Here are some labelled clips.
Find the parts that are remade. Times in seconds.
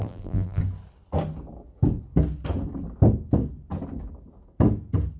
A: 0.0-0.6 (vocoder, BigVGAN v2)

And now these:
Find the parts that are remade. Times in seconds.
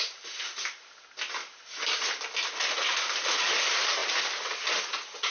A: 1.4-2.3 (vocoder, BigVGAN v2)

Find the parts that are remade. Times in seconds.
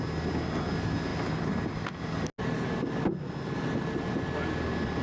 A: none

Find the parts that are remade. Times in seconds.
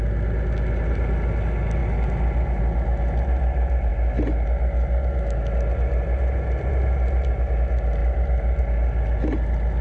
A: none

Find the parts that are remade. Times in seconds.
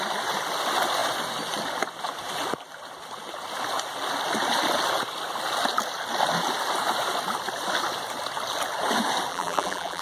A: 9.3-10.0 (vocoder, BigVGAN v2)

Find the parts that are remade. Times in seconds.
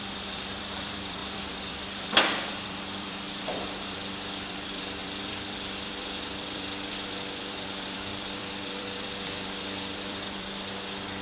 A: 0.0-11.2 (vocoder, BigVGAN v2)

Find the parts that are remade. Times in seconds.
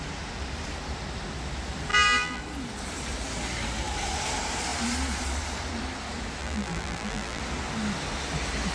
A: 1.9-2.4 (vocoder, BigVGAN v2); 6.4-7.4